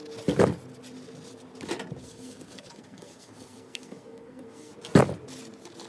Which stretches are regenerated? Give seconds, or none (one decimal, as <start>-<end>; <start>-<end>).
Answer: 2.0-4.7